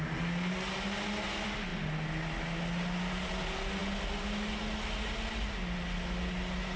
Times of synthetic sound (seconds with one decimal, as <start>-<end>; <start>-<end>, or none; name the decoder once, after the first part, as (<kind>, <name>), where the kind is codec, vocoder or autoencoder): none